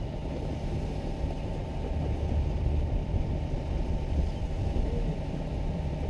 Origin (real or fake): real